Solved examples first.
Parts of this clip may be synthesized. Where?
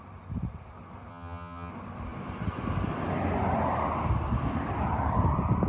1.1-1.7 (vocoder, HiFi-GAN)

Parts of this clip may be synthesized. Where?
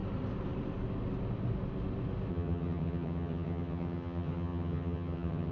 2.3-5.5 (vocoder, HiFi-GAN)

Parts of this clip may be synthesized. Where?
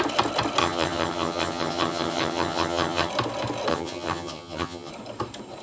0.6-3.1 (vocoder, HiFi-GAN); 3.7-4.9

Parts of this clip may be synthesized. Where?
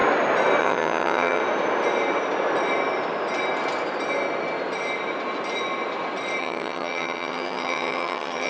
0.6-1.4 (vocoder, HiFi-GAN); 6.4-8.5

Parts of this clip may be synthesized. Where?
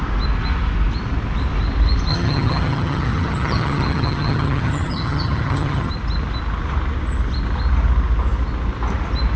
2.1-5.9 (vocoder, HiFi-GAN)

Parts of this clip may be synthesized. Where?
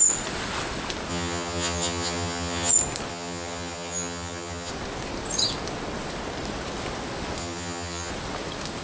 1.1-2.7 (vocoder, HiFi-GAN); 3.1-4.7; 7.4-8.1